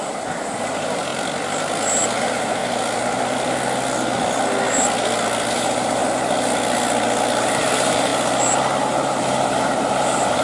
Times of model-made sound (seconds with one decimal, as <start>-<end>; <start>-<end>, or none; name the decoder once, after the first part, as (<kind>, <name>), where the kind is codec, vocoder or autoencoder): 0.0-1.1 (vocoder, BigVGAN v2); 2.2-2.6; 5.5-6.0; 7.4-8.1; 8.8-10.4